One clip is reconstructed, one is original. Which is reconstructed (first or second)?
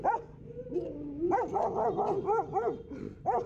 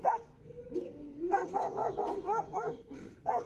second